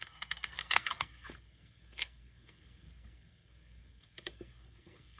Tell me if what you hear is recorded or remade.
remade